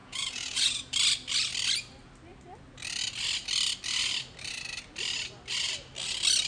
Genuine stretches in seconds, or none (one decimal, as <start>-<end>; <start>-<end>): 0.8-6.5